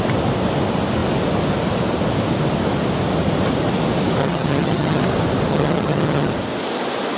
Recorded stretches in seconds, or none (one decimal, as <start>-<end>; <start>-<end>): 0.0-4.2; 5.0-5.5; 6.3-7.2